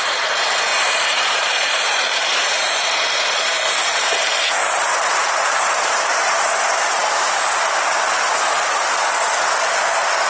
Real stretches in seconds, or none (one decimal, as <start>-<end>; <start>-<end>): 0.0-0.7; 2.5-4.6; 6.4-10.3